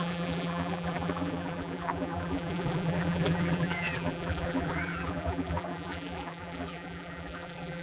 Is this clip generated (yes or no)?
yes